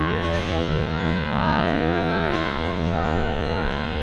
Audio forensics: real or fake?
fake